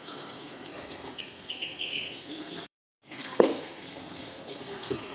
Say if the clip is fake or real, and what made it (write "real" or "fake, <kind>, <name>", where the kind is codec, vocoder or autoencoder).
fake, codec, SNAC